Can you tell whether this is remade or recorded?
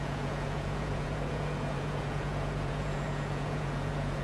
remade